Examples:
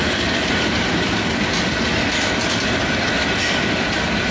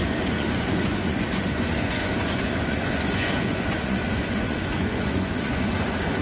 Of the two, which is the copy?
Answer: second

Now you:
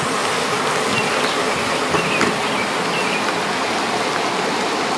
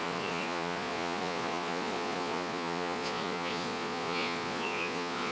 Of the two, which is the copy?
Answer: second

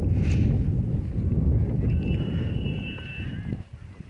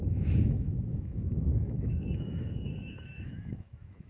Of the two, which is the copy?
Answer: second